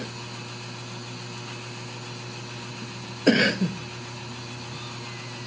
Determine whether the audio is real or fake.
real